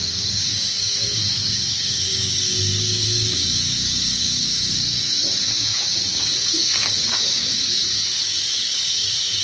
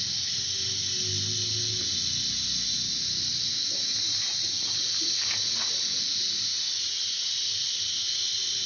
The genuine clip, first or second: second